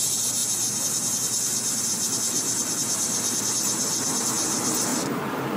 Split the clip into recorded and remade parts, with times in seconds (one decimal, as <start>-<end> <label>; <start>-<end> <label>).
0.0-5.6 remade